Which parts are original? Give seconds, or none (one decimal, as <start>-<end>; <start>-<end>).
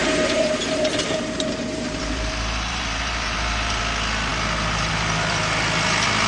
3.8-6.3